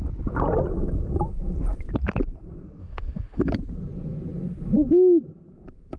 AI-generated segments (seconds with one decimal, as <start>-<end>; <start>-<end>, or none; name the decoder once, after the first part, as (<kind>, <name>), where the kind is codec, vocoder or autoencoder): 2.8-3.5 (autoencoder, DAC-VAE)